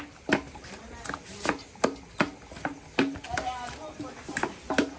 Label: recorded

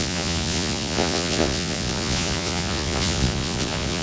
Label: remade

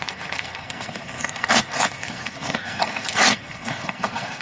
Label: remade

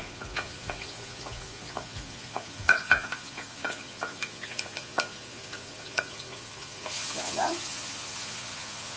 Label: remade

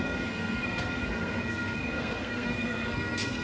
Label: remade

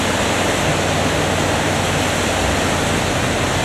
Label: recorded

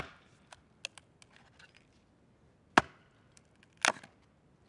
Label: recorded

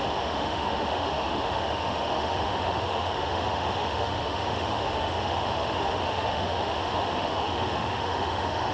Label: remade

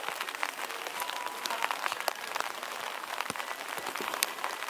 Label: remade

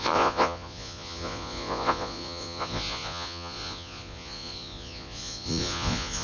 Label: remade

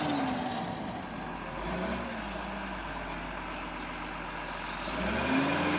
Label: recorded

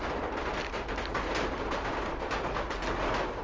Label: recorded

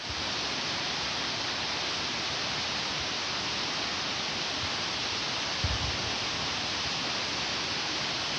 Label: recorded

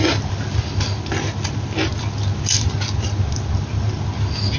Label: recorded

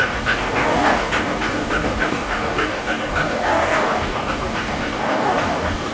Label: remade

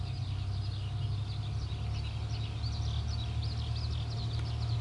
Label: recorded